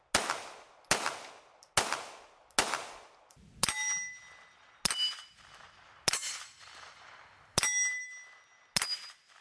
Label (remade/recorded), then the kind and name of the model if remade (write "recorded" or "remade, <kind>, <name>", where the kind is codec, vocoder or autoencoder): recorded